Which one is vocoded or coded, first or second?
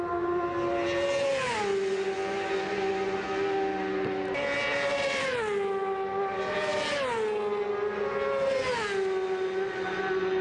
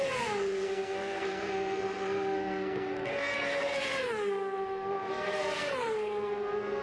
second